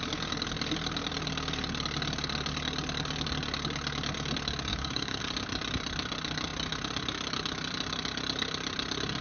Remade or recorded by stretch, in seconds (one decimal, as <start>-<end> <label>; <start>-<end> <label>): 0.0-4.7 recorded; 4.7-5.2 remade; 5.2-9.2 recorded